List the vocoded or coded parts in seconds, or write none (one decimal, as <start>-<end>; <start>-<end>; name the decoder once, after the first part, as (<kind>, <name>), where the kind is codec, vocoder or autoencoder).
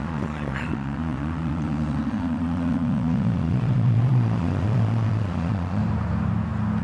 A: 0.0-5.8 (vocoder, Vocos)